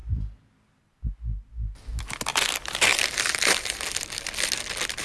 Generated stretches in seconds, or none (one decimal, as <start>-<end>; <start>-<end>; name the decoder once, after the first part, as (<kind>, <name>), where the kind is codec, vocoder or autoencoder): 0.0-0.5 (vocoder, BigVGAN v2); 2.9-3.6